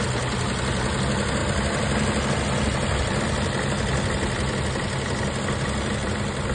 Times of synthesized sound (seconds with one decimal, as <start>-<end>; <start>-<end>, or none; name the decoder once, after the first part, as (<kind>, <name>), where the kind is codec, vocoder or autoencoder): none